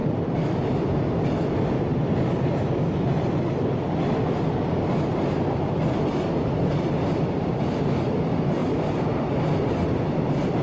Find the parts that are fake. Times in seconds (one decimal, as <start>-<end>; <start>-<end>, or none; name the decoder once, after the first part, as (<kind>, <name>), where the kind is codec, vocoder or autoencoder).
8.6-9.3 (vocoder, BigVGAN v2)

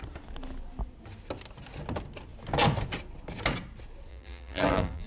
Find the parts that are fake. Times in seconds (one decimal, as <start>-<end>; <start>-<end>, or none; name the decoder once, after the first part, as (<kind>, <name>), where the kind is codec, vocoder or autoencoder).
4.1-5.1 (vocoder, BigVGAN v2)

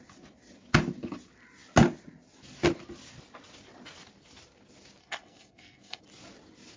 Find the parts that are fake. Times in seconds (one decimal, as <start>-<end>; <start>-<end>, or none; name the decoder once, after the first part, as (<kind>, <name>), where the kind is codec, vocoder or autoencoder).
5.0-6.0 (codec, SNAC)

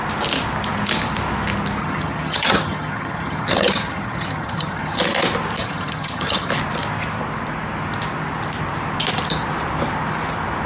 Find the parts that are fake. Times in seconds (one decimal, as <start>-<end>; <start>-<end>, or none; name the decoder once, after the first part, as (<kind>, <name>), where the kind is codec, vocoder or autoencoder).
1.8-5.0 (vocoder, HiFi-GAN); 5.6-6.5

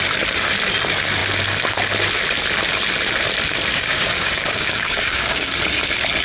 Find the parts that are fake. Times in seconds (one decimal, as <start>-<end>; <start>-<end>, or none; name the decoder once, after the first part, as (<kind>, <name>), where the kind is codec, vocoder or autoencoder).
3.7-5.6 (codec, DAC)

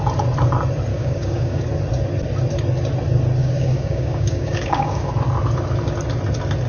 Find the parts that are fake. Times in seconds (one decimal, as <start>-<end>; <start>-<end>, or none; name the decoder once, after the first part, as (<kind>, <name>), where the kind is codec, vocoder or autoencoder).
0.9-1.6 (codec, DAC); 3.4-5.1

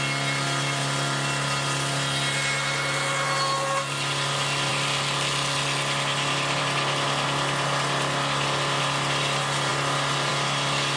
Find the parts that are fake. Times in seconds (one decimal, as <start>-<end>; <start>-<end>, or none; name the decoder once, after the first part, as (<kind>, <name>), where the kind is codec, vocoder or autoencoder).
none

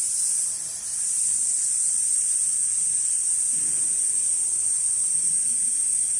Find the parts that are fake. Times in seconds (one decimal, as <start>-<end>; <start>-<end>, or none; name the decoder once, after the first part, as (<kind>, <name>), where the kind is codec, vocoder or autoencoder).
0.0-6.2 (vocoder, BigVGAN v2)